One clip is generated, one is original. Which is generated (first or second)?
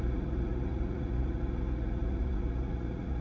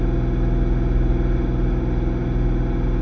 first